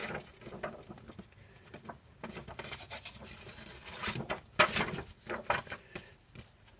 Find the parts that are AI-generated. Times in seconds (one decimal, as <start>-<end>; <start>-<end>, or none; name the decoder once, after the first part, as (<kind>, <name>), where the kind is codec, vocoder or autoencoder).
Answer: none